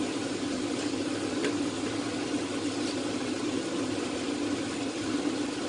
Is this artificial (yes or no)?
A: no